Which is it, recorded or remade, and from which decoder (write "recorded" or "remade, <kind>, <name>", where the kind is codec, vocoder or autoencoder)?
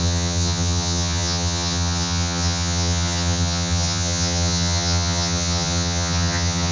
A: remade, vocoder, HiFi-GAN